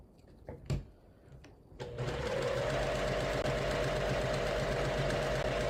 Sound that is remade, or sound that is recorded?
recorded